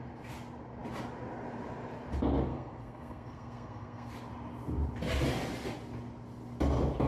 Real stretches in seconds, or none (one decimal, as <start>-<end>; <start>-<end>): 0.0-2.5; 4.1-7.1